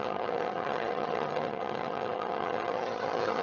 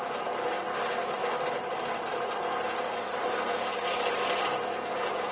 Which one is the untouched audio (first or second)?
second